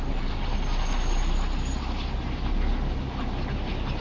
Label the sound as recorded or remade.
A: recorded